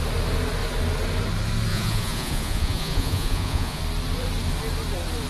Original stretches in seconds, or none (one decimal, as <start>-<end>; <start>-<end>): 0.0-1.7; 3.8-5.3

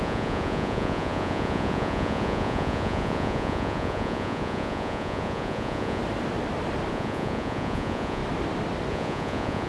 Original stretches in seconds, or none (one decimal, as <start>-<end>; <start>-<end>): 6.0-6.9; 8.2-8.9

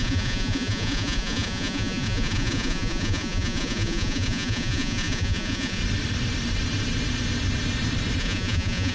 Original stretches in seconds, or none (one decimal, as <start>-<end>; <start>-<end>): 5.8-8.2

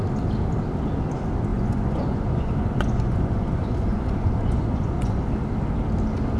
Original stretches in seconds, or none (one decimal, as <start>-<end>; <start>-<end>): 0.0-1.5; 5.3-6.4

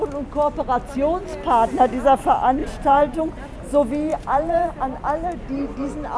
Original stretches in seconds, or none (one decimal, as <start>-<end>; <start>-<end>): 0.0-2.6; 3.2-4.1; 4.7-6.2

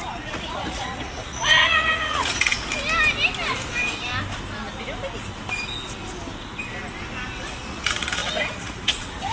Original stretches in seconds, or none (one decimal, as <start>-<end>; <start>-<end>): 2.5-7.4

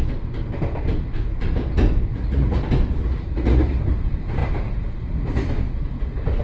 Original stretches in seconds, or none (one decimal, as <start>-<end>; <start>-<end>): 0.0-2.1; 2.6-3.0; 3.8-6.4